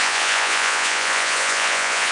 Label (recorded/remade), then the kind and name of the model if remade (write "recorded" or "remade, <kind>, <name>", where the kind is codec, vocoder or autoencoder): remade, vocoder, Vocos